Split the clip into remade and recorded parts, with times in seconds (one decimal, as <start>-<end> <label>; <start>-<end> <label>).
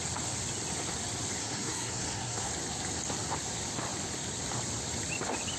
0.0-1.4 recorded; 1.4-2.5 remade; 2.5-5.6 recorded